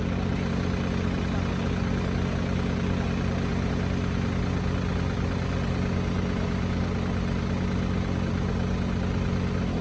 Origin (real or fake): real